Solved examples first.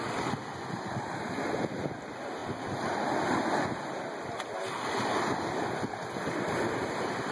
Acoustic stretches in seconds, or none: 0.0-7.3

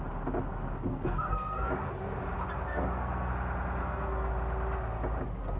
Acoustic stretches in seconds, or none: 0.0-0.9; 1.7-2.7; 3.3-3.8; 4.3-5.6

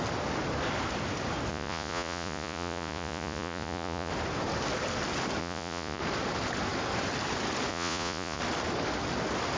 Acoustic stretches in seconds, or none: 0.0-1.5; 4.1-5.4; 6.0-7.7; 8.4-9.6

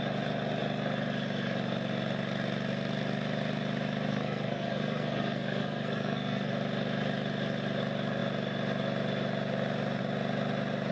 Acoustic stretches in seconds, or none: 0.0-4.1; 6.5-10.9

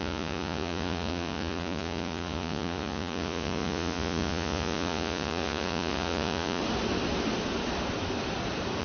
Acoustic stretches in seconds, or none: 6.6-8.8

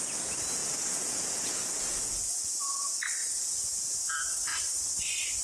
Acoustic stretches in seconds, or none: 0.0-0.6; 2.6-3.2; 4.1-5.4